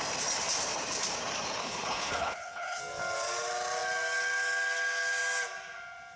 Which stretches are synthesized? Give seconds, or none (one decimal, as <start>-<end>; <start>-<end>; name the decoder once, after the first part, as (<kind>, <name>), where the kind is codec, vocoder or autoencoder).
1.6-2.8 (codec, HILCodec)

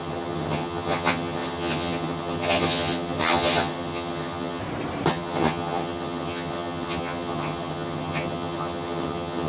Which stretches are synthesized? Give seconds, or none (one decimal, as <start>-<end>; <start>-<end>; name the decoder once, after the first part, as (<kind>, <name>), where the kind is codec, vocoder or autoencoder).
0.0-4.6 (vocoder, HiFi-GAN); 5.1-9.5

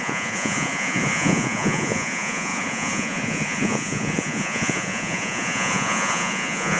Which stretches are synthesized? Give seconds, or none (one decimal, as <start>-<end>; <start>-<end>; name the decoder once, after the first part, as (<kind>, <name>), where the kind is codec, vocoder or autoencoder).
0.0-6.8 (vocoder, Vocos)